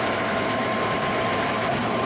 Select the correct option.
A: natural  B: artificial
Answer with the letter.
B